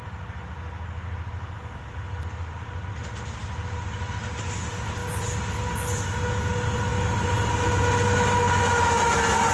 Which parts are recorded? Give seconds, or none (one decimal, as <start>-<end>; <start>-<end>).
0.0-9.5